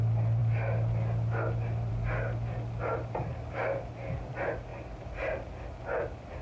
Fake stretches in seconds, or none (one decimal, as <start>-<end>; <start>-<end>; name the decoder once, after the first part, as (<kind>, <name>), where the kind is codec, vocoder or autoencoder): none